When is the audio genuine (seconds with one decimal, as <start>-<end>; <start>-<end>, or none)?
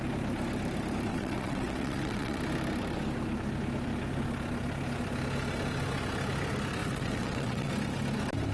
0.0-1.1; 2.4-6.8; 7.7-8.5